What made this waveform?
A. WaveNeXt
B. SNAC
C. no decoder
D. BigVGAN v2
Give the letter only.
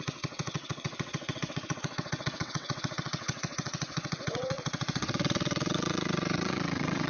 A